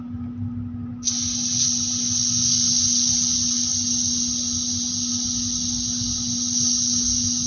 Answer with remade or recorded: recorded